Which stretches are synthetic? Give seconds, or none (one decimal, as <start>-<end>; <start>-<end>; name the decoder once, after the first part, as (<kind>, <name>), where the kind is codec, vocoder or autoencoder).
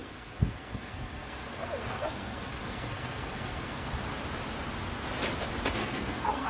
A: 0.0-3.9 (codec, SNAC); 5.8-6.5